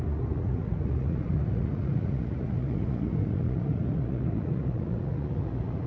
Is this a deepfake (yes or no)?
yes